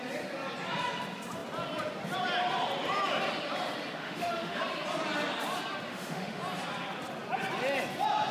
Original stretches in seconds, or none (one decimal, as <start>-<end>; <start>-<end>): 0.0-4.0; 4.6-5.9; 6.4-8.3